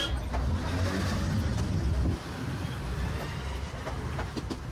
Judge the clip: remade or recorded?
recorded